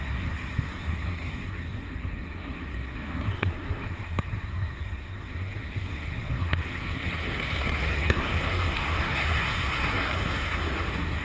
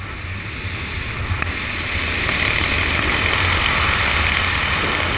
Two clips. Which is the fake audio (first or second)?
first